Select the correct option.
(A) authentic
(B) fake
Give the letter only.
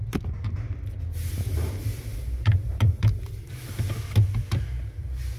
A